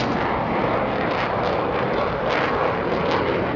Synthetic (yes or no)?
no